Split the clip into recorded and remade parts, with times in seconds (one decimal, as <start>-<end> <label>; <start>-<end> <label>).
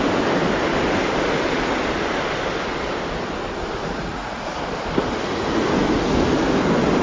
0.0-3.8 recorded; 3.8-4.6 remade; 4.6-7.0 recorded